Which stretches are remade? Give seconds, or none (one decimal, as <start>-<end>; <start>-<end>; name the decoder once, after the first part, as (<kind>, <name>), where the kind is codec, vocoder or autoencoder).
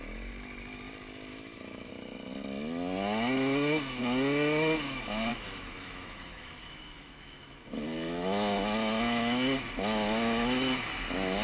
1.3-1.9 (autoencoder, DAC-VAE); 5.3-7.6